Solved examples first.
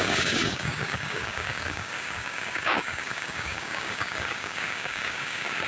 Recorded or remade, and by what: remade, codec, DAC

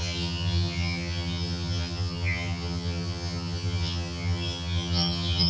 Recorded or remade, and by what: remade, vocoder, HiFi-GAN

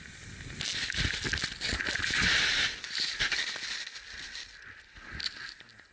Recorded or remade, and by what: recorded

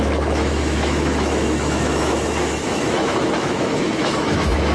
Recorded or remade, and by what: remade, autoencoder, DAC-VAE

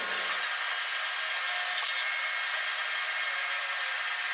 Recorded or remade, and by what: recorded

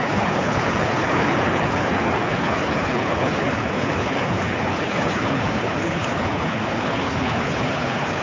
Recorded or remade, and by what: remade, codec, HILCodec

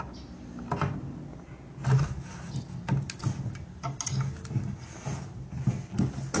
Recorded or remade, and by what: recorded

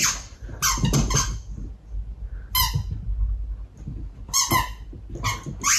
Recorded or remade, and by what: recorded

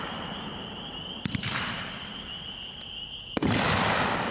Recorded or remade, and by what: recorded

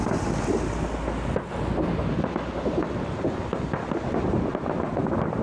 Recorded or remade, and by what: recorded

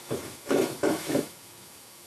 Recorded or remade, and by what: remade, autoencoder, DAC-VAE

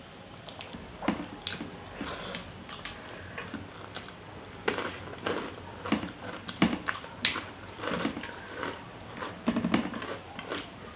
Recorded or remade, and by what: recorded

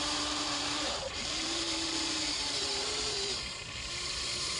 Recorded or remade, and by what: remade, vocoder, BigVGAN v2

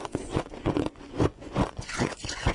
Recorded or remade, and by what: remade, vocoder, Vocos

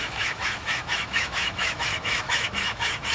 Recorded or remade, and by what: remade, autoencoder, DAC-VAE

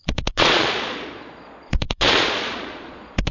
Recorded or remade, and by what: remade, vocoder, Vocos